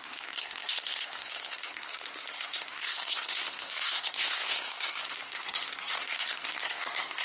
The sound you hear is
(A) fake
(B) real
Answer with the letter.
A